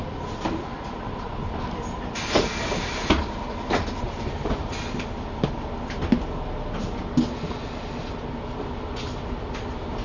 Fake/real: real